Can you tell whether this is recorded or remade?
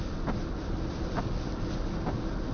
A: recorded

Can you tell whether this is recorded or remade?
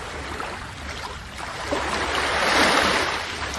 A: recorded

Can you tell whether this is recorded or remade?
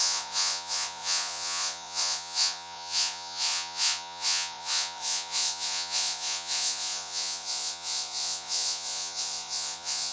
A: remade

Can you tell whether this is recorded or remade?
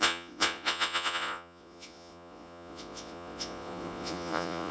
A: remade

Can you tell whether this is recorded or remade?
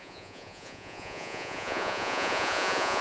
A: remade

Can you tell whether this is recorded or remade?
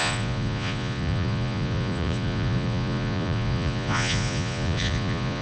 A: remade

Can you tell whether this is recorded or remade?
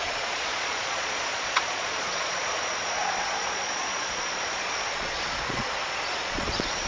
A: remade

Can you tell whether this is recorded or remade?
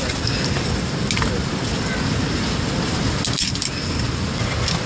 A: recorded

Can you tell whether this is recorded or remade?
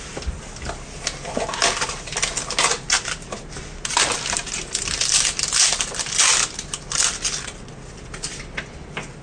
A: recorded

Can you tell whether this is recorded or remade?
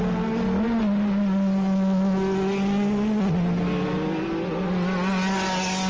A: recorded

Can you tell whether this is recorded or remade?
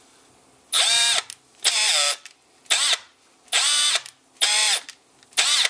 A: recorded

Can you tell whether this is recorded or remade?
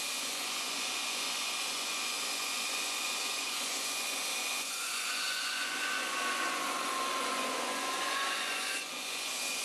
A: remade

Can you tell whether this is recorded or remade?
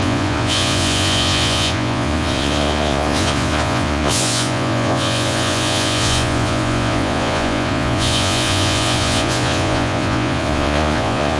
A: remade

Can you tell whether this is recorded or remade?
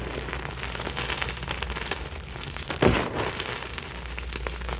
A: recorded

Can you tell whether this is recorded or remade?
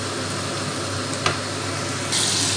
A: recorded